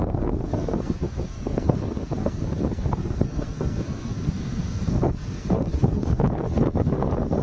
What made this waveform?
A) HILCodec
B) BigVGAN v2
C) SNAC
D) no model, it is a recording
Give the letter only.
C